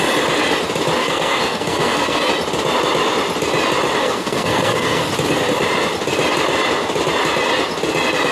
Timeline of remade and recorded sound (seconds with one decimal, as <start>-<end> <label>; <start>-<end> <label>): 0.0-1.0 recorded; 1.0-2.3 remade; 2.3-4.0 recorded; 4.0-5.1 remade; 5.1-8.3 recorded